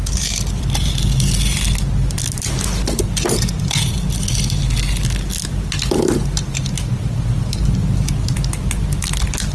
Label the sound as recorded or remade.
recorded